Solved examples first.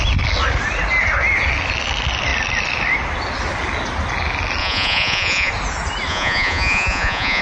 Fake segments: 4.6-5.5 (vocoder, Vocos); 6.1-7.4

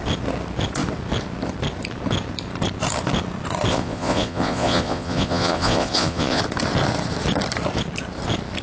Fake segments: 3.7-6.4 (vocoder, Vocos)

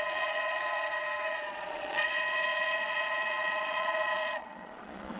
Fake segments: 0.0-5.2 (vocoder, Vocos)